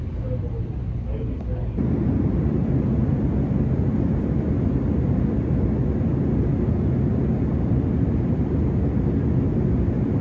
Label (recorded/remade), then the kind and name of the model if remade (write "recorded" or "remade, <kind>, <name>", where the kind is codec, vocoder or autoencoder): recorded